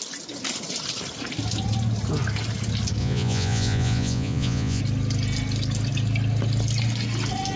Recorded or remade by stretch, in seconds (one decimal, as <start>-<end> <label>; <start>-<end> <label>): 0.0-3.0 recorded; 3.0-4.8 remade; 4.8-7.6 recorded